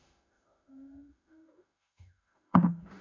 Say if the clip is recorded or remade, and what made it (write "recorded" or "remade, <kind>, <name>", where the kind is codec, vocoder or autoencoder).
remade, autoencoder, DAC-VAE